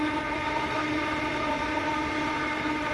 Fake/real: real